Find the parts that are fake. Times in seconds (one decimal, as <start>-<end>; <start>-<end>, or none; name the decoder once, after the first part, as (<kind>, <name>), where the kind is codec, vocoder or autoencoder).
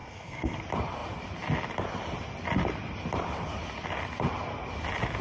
0.0-0.6 (codec, SNAC)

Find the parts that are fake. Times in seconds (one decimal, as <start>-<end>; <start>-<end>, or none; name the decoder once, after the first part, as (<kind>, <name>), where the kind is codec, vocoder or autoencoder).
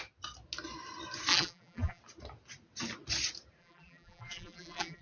1.3-2.0 (vocoder, BigVGAN v2); 3.6-5.0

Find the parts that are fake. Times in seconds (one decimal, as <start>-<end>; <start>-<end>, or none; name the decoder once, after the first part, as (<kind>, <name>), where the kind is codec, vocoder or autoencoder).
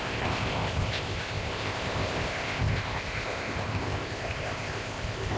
0.0-5.4 (codec, ZipCodec)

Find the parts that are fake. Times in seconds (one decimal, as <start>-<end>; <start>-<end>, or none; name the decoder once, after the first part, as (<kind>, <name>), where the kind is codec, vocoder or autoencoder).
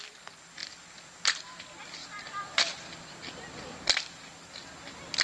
none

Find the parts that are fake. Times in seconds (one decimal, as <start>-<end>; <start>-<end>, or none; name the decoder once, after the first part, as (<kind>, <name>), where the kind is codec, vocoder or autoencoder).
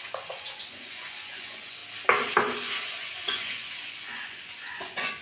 0.0-1.8 (vocoder, Vocos); 2.6-5.2